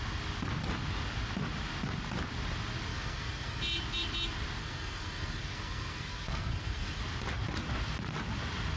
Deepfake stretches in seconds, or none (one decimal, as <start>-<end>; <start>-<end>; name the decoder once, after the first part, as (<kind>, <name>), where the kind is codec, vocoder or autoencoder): 2.9-3.6 (codec, SNAC); 4.6-7.0